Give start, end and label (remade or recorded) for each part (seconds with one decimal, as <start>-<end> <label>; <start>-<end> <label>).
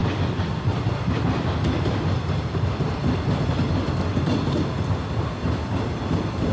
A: 0.0-6.5 recorded